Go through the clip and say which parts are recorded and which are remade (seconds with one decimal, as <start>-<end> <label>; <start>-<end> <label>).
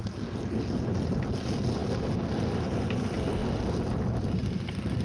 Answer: 0.0-5.0 recorded